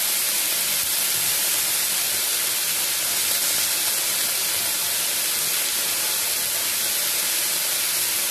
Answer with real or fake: real